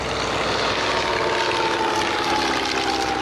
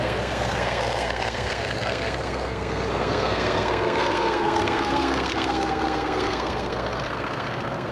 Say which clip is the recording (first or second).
first